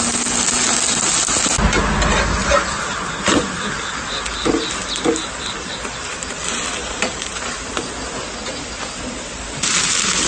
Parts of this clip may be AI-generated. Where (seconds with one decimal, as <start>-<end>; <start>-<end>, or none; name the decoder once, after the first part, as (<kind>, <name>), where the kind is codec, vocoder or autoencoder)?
2.4-3.4 (vocoder, BigVGAN v2); 6.8-7.7